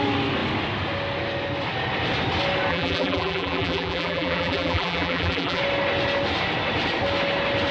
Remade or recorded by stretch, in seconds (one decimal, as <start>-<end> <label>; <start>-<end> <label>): 0.0-2.7 recorded; 2.7-5.6 remade; 5.6-7.7 recorded